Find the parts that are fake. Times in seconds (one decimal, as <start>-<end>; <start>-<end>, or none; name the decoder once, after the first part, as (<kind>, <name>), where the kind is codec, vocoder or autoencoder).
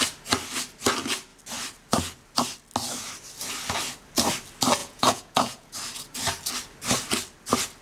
4.8-5.7 (vocoder, Vocos)